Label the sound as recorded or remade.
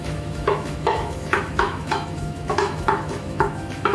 remade